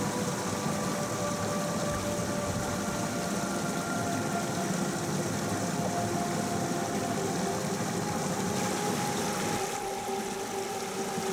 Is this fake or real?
real